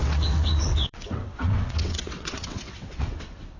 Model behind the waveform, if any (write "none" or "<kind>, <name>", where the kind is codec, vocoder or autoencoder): vocoder, WaveNeXt